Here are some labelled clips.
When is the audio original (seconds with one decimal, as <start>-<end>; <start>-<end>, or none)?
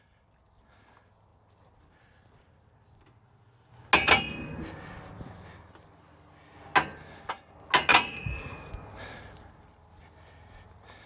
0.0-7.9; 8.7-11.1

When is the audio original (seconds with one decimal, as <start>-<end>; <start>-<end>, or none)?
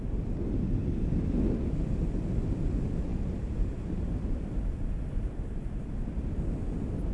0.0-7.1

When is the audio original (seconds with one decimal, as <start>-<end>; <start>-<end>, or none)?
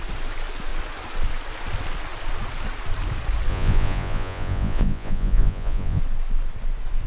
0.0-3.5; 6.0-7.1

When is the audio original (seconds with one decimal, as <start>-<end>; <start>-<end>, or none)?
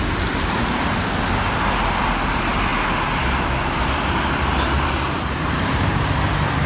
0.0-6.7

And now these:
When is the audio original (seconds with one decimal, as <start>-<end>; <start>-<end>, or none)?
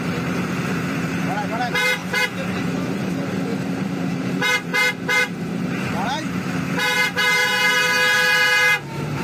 4.7-5.2; 7.4-9.2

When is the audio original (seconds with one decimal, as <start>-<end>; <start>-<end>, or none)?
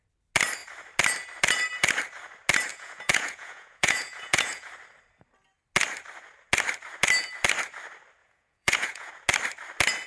0.0-2.7; 4.7-8.2; 9.1-10.1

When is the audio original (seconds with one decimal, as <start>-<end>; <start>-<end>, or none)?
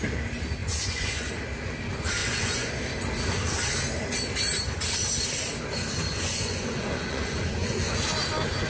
0.0-0.6; 1.3-2.2; 2.7-6.1; 8.0-8.7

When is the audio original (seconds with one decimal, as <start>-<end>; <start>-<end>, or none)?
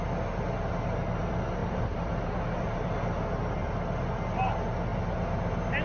0.0-1.6; 3.0-5.8